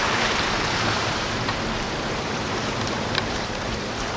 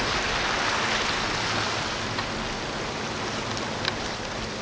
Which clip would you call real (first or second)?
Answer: second